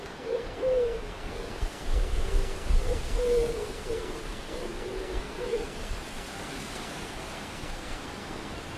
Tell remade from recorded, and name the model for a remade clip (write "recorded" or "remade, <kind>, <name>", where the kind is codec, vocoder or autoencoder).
remade, codec, SNAC